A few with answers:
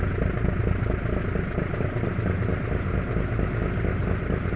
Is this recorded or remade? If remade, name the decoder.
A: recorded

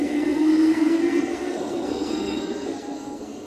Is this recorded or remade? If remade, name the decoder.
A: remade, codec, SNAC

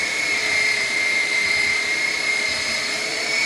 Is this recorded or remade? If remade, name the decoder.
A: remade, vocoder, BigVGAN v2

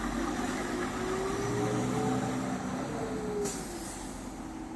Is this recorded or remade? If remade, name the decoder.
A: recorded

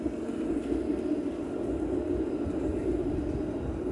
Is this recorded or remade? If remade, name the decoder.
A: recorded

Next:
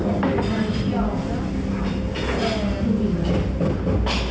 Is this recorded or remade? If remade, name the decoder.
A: recorded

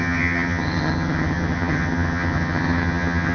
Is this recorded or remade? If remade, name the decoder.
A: remade, vocoder, HiFi-GAN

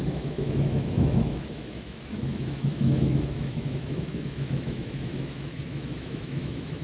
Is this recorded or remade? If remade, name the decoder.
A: remade, autoencoder, DAC-VAE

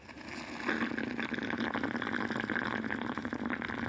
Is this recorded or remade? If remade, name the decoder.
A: recorded